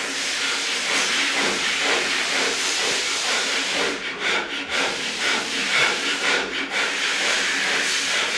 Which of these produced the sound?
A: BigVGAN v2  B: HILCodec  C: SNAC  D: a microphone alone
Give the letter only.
A